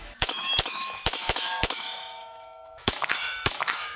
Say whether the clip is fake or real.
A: fake